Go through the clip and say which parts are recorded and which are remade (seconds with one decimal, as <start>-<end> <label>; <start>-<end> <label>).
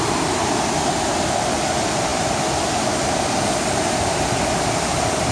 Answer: 0.0-2.1 recorded; 2.1-4.6 remade; 4.6-5.3 recorded